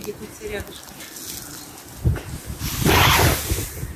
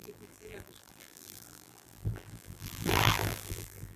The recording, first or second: first